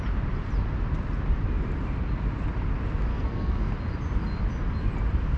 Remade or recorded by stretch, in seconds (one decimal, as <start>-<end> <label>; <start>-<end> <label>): 0.0-3.1 recorded; 3.1-3.7 remade; 3.7-5.4 recorded